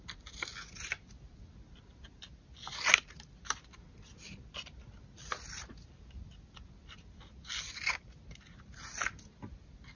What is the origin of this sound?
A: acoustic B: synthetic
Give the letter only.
A